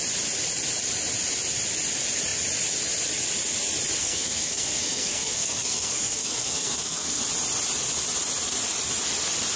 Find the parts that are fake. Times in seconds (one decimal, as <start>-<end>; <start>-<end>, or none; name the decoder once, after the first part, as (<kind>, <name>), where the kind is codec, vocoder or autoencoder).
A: 4.0-7.2 (codec, SNAC)